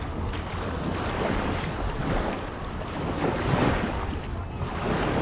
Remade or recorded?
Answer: recorded